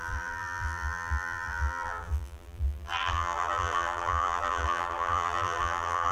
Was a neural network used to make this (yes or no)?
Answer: yes